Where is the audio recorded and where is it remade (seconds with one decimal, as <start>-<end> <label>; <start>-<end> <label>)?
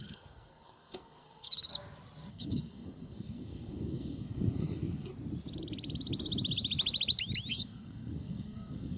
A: 0.0-1.7 remade; 1.7-2.3 recorded; 2.3-5.1 remade; 5.1-7.5 recorded; 7.5-9.0 remade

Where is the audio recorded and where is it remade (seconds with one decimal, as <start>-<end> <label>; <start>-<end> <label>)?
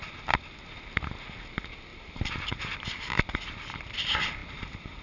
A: 0.0-1.9 recorded; 1.9-2.6 remade; 2.6-4.4 recorded; 4.4-5.0 remade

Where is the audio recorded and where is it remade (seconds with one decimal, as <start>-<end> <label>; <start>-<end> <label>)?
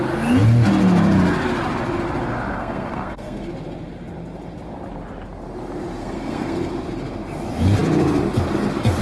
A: 0.0-2.5 recorded; 2.5-3.5 remade; 3.5-6.0 recorded; 6.0-6.7 remade; 6.7-9.0 recorded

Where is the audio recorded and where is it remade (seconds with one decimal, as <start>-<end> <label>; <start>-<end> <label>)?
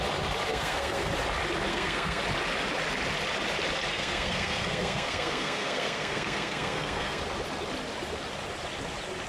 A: 0.0-0.5 recorded; 0.5-1.1 remade; 1.1-1.7 recorded; 1.7-2.2 remade; 2.2-3.9 recorded; 3.9-7.2 remade; 7.2-9.3 recorded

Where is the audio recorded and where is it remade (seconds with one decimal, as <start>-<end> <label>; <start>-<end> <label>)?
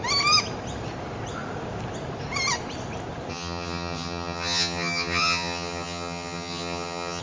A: 0.0-3.3 recorded; 3.3-7.2 remade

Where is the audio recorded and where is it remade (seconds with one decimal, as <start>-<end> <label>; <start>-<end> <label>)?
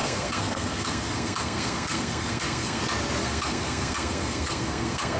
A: 0.0-2.8 remade; 2.8-3.2 recorded; 3.2-5.2 remade